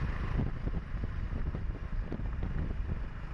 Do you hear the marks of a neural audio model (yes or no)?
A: no